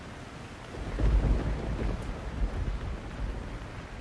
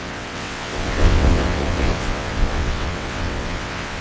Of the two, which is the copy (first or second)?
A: second